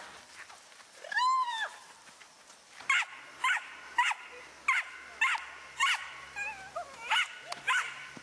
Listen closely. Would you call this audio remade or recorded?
recorded